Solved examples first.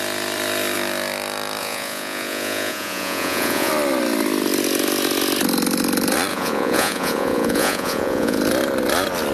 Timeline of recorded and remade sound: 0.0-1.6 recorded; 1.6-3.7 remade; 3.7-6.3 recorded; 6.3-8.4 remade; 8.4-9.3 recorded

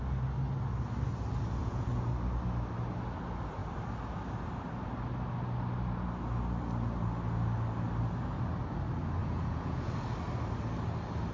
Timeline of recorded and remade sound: 0.0-1.6 recorded; 1.6-2.1 remade; 2.1-9.2 recorded; 9.2-9.9 remade; 9.9-11.3 recorded

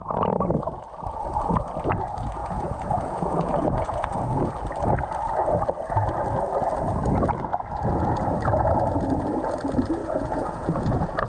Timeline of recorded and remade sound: 0.0-2.4 recorded; 2.4-4.5 remade; 4.5-10.0 recorded; 10.0-11.3 remade

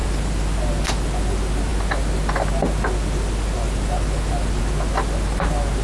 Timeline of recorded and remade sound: 0.0-5.8 recorded

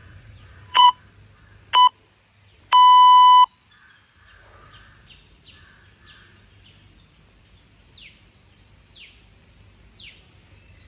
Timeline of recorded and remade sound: 0.0-1.0 remade; 1.0-10.9 recorded

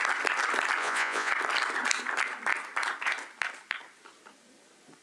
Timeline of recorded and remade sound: 0.0-0.8 recorded; 0.8-1.3 remade; 1.3-5.0 recorded

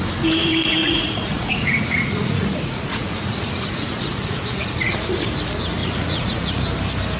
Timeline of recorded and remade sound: 0.0-0.8 recorded; 0.8-4.9 remade; 4.9-5.8 recorded; 5.8-6.6 remade; 6.6-7.2 recorded